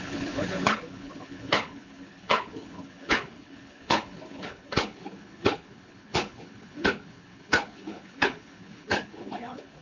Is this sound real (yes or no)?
no